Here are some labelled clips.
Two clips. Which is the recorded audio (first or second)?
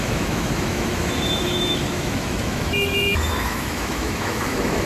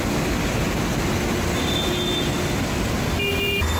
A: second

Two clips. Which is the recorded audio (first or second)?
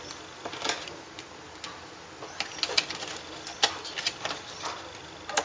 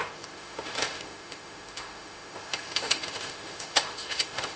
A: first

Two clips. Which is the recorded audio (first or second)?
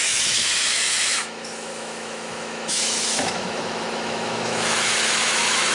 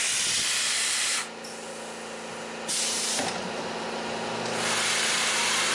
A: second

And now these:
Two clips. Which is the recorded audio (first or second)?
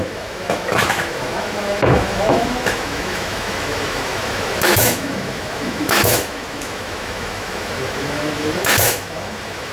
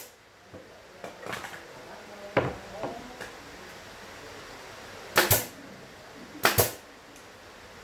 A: second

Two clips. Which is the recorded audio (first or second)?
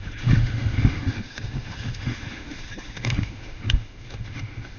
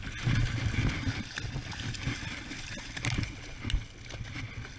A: second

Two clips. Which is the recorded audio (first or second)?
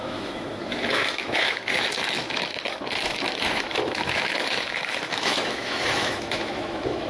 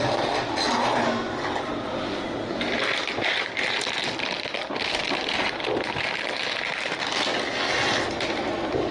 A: second